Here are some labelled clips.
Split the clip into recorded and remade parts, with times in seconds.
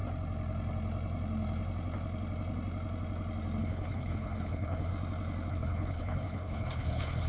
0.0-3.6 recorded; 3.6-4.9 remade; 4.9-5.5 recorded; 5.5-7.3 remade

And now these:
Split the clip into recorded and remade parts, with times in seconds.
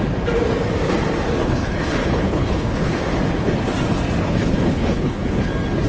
0.0-1.4 recorded; 1.4-3.0 remade; 3.0-4.2 recorded; 4.2-5.5 remade; 5.5-5.9 recorded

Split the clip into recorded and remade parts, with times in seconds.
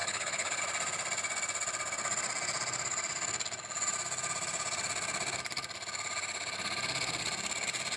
0.0-0.6 remade; 0.6-8.0 recorded